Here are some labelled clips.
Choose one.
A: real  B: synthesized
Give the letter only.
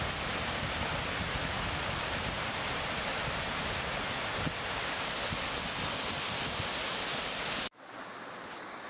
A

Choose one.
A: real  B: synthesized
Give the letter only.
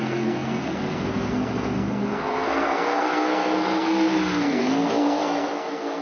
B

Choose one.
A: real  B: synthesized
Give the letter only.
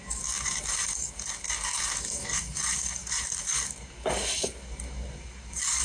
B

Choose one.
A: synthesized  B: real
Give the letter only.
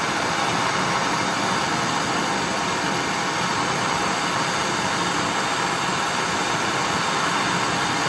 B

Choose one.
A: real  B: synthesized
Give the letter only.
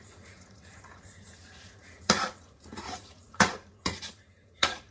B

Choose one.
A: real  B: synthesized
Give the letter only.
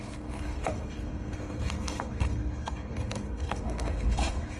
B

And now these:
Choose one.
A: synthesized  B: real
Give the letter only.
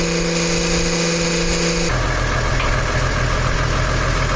B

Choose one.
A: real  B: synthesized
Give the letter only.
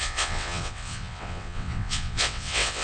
B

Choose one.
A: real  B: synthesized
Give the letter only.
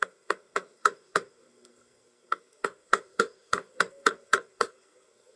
B